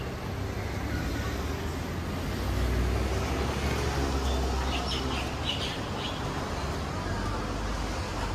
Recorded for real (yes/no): yes